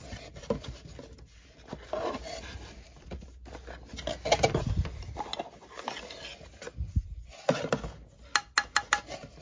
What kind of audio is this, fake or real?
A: real